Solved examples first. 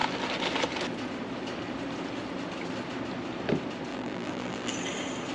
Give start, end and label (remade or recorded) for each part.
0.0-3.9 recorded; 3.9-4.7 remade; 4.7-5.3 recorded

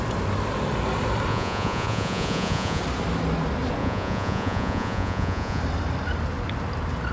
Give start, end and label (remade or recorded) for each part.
0.0-1.3 recorded; 1.3-2.8 remade; 2.8-3.8 recorded; 3.8-5.6 remade; 5.6-7.1 recorded

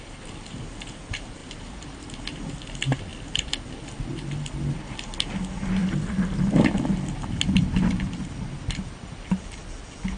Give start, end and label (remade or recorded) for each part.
0.0-10.2 recorded